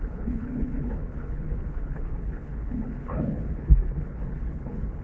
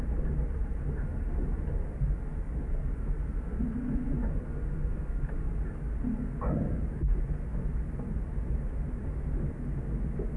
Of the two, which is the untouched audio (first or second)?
second